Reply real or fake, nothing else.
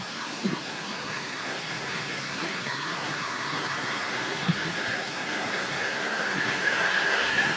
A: fake